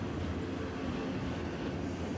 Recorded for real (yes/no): yes